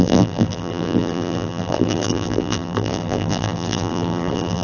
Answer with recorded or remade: remade